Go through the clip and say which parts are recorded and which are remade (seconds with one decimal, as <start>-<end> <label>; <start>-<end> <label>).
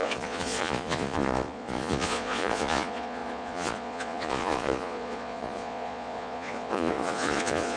0.0-7.8 remade